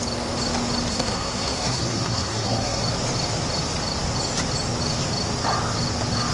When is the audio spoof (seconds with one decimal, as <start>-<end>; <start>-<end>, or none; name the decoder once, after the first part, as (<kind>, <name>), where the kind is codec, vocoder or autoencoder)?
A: 0.9-2.8 (codec, SNAC)